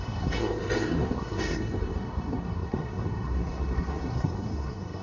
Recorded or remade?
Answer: remade